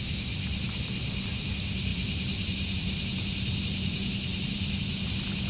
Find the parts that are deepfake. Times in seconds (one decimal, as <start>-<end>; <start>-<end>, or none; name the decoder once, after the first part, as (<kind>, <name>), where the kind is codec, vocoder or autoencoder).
1.9-4.8 (vocoder, BigVGAN v2)